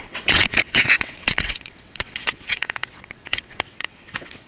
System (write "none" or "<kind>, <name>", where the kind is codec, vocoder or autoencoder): vocoder, WaveNeXt